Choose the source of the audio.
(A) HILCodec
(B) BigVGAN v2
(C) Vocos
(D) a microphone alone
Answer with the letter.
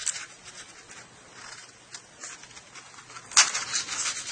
D